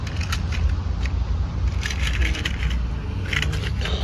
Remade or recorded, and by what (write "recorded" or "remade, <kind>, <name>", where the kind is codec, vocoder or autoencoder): recorded